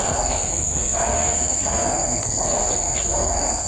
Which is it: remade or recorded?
remade